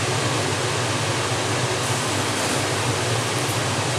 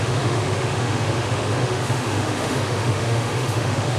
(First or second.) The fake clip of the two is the second